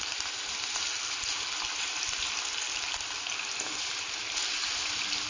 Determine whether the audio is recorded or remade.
recorded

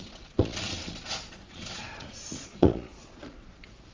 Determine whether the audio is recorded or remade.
remade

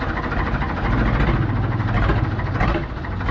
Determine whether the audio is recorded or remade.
recorded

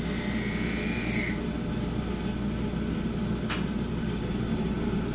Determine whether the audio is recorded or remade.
recorded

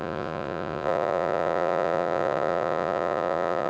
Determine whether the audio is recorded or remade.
remade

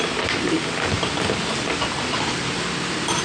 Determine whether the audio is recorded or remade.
recorded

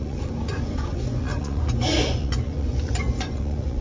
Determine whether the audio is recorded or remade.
remade